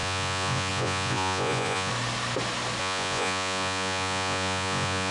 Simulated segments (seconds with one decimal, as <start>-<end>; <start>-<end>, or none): 0.0-1.9; 2.8-5.1